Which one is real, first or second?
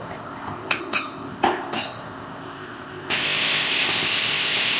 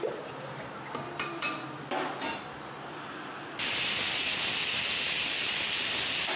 second